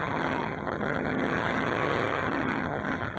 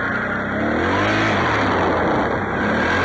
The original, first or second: second